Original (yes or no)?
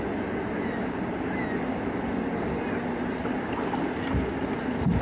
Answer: yes